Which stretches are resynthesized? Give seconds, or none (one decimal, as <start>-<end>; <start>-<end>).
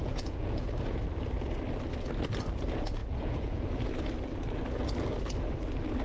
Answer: 0.0-0.7; 3.0-3.7